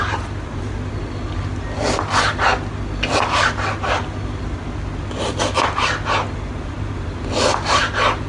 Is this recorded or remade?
recorded